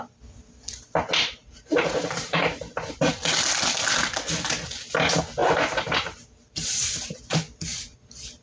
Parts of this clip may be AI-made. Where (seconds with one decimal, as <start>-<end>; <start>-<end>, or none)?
1.4-2.6; 5.4-7.2